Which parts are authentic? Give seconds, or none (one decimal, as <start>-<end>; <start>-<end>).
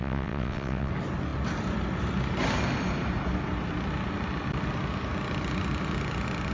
0.9-6.5